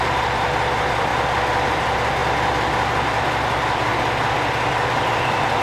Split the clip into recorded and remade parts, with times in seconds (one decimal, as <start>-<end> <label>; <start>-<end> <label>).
0.0-1.1 remade; 1.1-1.7 recorded; 1.7-2.2 remade; 2.2-2.9 recorded; 2.9-3.9 remade; 3.9-5.0 recorded; 5.0-5.6 remade